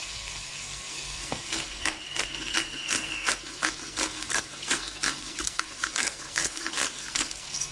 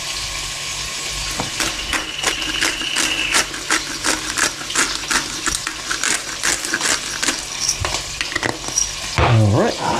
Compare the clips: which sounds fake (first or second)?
first